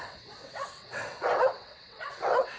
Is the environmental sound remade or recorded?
remade